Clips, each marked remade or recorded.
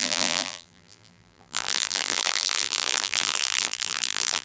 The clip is remade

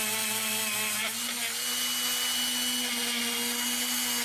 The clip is recorded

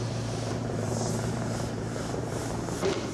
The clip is remade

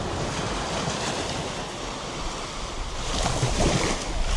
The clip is remade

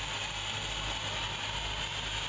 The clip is recorded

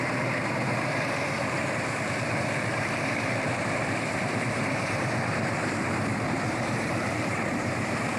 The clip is remade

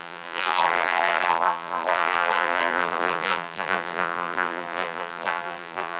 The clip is remade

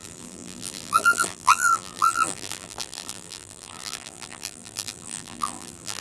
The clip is remade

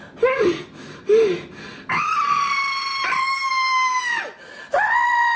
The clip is recorded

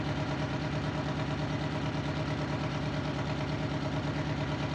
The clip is remade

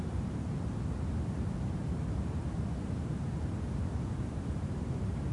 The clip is remade